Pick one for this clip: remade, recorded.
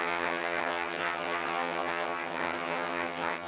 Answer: remade